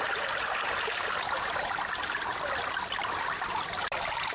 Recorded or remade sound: recorded